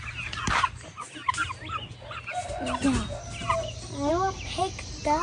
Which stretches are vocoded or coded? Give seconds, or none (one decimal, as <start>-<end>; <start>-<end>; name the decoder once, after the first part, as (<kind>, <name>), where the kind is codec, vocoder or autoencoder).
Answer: none